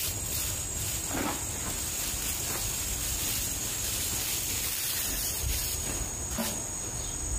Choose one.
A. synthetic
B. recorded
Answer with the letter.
B